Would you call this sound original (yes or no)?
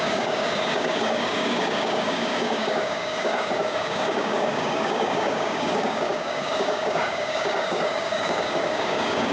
no